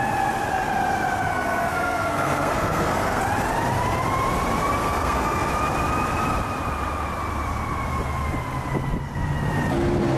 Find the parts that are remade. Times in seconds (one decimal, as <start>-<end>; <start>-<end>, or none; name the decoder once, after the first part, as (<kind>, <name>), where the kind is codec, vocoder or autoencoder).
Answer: 1.3-3.2 (codec, SNAC); 4.8-5.5